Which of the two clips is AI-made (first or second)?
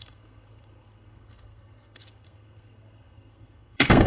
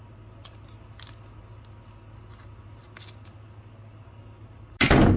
first